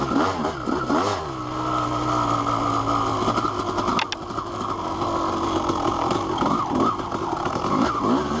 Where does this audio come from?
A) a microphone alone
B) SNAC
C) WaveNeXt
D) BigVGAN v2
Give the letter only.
A